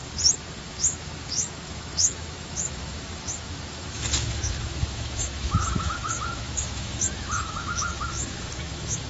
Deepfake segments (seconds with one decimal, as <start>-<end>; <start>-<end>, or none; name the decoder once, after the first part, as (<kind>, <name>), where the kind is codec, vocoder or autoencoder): 0.6-9.1 (autoencoder, DAC-VAE)

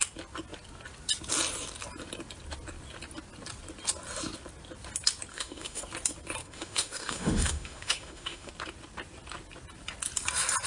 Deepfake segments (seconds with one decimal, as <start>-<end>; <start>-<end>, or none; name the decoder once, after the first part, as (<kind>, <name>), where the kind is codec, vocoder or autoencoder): 5.3-5.8 (autoencoder, DAC-VAE); 6.4-8.5